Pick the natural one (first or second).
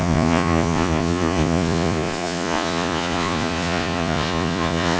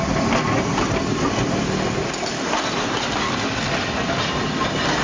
second